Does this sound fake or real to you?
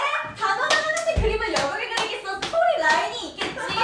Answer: real